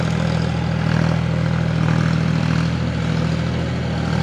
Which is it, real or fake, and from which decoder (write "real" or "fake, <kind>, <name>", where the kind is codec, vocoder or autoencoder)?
real